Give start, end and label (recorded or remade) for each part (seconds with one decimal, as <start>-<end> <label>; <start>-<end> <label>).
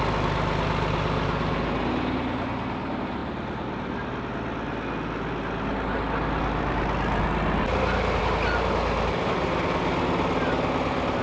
0.0-11.2 recorded